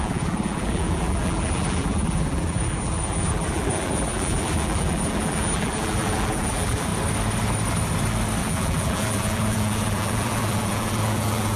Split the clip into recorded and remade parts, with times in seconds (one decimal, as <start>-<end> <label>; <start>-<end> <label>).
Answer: 0.0-6.9 remade; 6.9-8.4 recorded; 8.4-11.6 remade